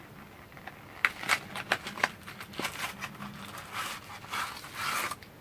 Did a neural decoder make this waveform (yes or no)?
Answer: no